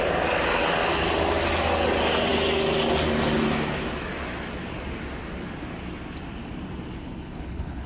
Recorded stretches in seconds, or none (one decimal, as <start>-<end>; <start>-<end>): 0.0-7.0